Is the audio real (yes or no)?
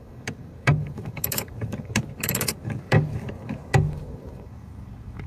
no